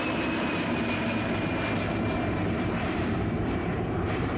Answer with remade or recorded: remade